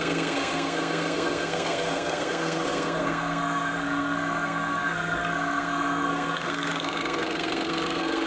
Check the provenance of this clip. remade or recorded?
remade